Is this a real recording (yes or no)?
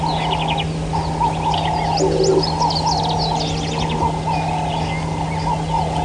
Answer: yes